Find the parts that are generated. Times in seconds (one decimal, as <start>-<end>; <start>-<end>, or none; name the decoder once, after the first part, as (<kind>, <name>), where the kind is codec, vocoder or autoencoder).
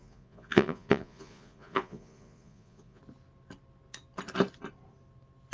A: 0.0-3.0 (vocoder, Vocos)